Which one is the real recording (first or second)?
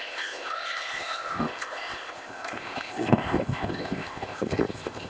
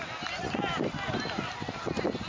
second